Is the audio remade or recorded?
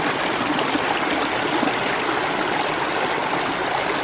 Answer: recorded